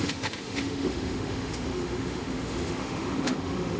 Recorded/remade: remade